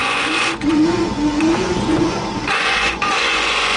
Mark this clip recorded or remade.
remade